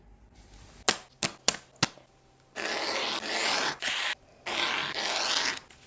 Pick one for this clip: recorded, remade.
recorded